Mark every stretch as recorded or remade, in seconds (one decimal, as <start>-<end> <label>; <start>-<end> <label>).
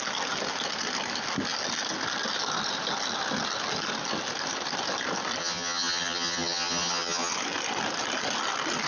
0.0-5.4 recorded; 5.4-7.3 remade; 7.3-8.9 recorded